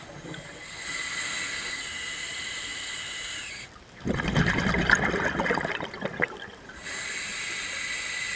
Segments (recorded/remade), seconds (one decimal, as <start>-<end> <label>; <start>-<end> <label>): 0.0-8.4 recorded